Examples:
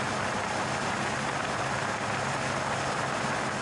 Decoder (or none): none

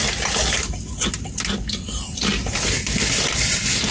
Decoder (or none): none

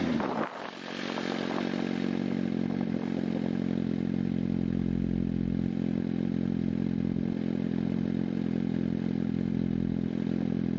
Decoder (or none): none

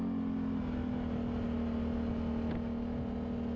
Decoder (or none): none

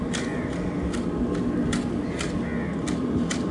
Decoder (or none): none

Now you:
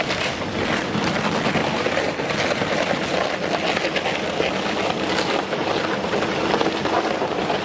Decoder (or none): none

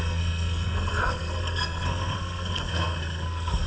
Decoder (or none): codec, SNAC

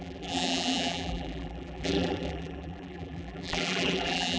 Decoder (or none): vocoder, BigVGAN v2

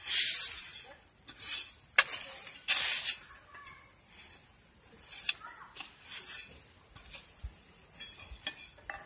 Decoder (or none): none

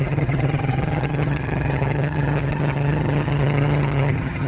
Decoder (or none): vocoder, HiFi-GAN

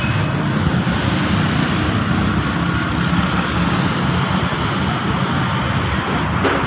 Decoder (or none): none